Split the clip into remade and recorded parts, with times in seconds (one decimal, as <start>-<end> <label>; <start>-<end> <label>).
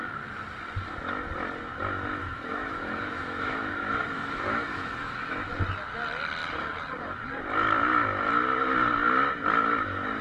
0.0-2.2 recorded; 2.2-5.5 remade; 5.5-10.2 recorded